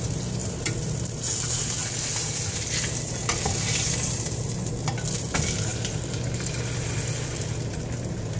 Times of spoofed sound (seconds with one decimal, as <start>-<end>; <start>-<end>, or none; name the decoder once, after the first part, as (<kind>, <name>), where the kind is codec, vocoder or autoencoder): 0.4-1.1 (vocoder, BigVGAN v2)